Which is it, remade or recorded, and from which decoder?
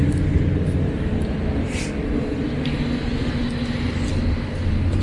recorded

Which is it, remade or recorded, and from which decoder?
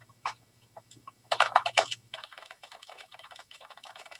remade, autoencoder, DAC-VAE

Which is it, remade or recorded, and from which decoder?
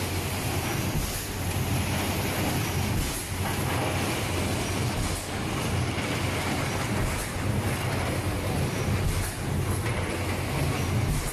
recorded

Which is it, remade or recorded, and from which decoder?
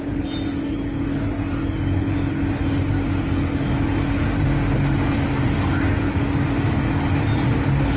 recorded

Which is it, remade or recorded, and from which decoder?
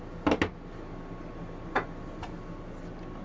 recorded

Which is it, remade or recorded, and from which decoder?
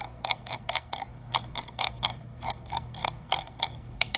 remade, codec, SNAC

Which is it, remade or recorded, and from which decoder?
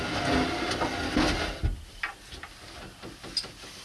recorded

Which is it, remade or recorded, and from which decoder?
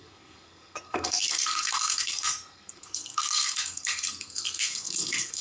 remade, codec, SNAC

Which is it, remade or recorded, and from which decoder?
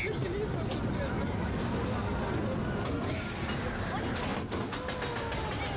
recorded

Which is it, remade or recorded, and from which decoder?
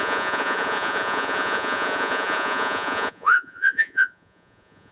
remade, vocoder, Vocos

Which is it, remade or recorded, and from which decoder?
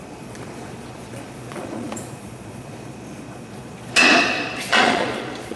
remade, vocoder, Vocos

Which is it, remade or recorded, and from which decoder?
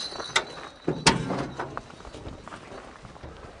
recorded